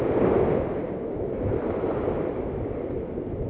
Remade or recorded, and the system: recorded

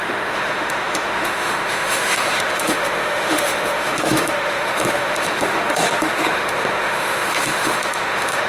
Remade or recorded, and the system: remade, autoencoder, DAC-VAE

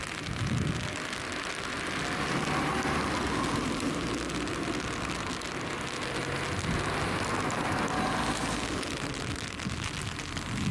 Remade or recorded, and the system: recorded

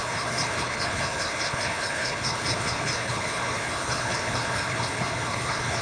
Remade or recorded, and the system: remade, codec, HILCodec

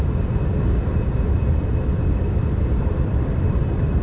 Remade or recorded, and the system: recorded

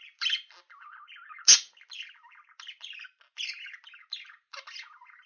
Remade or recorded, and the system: recorded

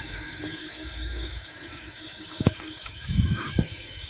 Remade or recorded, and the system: remade, codec, DAC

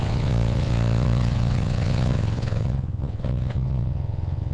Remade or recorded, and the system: remade, vocoder, WaveNeXt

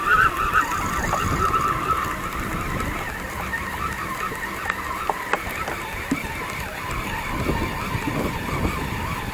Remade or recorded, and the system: remade, vocoder, BigVGAN v2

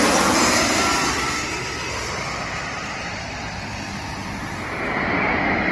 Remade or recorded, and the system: recorded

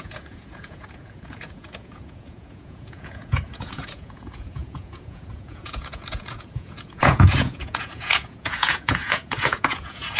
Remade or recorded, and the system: remade, vocoder, Vocos